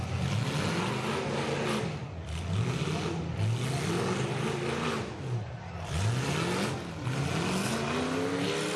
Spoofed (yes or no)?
no